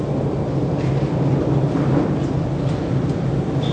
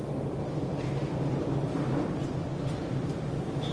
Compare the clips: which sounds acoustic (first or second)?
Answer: first